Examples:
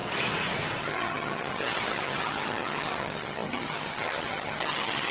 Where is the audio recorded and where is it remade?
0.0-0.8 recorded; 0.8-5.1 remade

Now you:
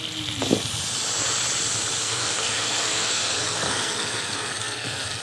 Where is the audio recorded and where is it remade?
0.0-2.0 recorded; 2.0-5.2 remade

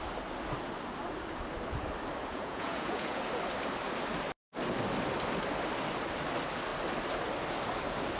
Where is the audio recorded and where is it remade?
0.0-2.3 recorded; 2.3-3.2 remade; 3.2-8.2 recorded

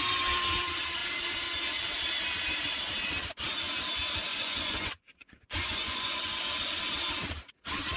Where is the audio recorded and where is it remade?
0.0-4.3 recorded; 4.3-6.5 remade; 6.5-8.0 recorded

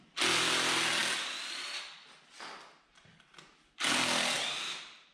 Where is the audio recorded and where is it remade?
0.0-5.1 recorded

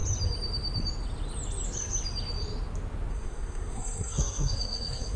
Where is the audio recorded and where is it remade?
0.0-3.1 recorded; 3.1-5.2 remade

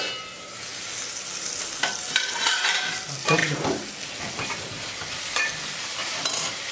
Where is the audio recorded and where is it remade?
0.0-0.7 remade; 0.7-1.8 recorded; 1.8-3.4 remade; 3.4-4.3 recorded; 4.3-6.7 remade

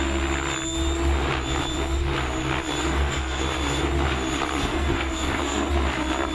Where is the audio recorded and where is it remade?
0.0-2.8 recorded; 2.8-3.4 remade; 3.4-4.7 recorded; 4.7-5.7 remade; 5.7-6.3 recorded